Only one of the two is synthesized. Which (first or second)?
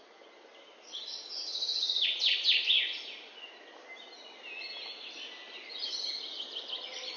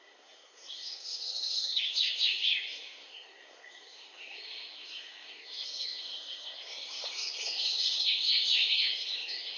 second